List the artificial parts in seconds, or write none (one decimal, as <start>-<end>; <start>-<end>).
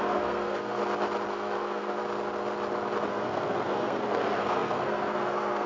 0.0-0.8; 1.3-2.0; 3.1-5.7